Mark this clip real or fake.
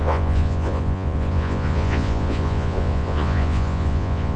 fake